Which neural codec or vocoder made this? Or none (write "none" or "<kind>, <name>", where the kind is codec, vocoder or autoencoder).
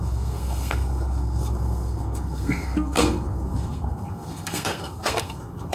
codec, SNAC